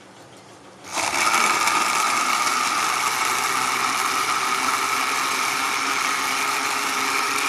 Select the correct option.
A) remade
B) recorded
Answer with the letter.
A